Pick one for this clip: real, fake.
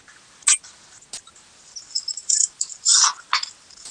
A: real